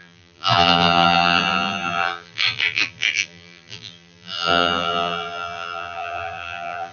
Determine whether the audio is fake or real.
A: fake